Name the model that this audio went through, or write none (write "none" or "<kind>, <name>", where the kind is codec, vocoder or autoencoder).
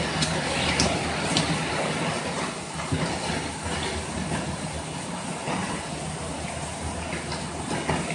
none